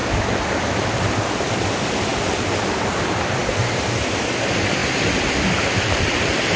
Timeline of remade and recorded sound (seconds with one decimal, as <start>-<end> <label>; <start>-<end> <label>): 0.0-3.4 remade; 3.4-4.3 recorded; 4.3-6.6 remade